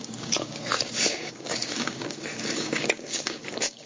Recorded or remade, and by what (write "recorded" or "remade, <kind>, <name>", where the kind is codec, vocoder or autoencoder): remade, codec, DAC